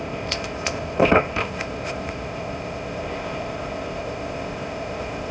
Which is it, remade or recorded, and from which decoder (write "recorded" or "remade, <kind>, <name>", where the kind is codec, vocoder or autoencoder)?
remade, codec, ZipCodec